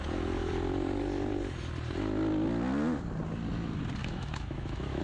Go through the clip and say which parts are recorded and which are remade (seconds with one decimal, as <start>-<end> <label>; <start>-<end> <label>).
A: 0.0-4.0 recorded; 4.0-5.0 remade